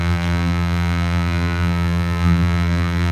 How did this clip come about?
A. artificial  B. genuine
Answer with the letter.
A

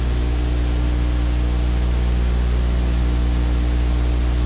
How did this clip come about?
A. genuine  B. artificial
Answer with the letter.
A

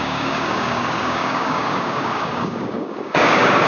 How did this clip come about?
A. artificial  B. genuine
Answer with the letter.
A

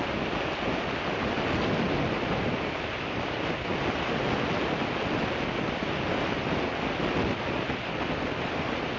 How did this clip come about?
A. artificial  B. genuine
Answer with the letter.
B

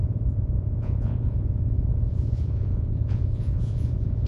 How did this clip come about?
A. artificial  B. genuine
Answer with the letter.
A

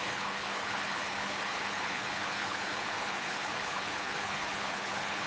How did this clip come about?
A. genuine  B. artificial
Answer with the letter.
B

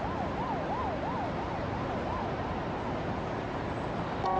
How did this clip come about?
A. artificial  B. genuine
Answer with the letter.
B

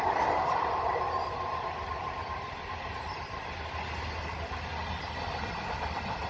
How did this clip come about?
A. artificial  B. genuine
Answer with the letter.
B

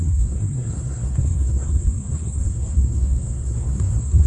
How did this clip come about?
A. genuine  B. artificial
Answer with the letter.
B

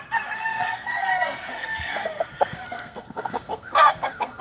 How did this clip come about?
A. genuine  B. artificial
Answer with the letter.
B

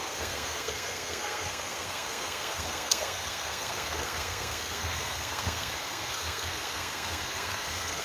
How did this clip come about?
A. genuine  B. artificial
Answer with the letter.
B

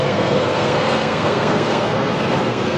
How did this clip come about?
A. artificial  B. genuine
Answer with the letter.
A